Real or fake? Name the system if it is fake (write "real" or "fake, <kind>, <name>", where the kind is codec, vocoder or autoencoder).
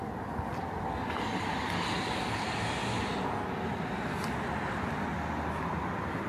real